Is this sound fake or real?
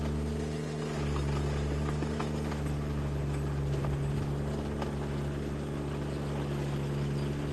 real